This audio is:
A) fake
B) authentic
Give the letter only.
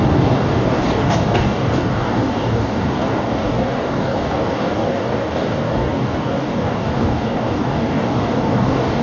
A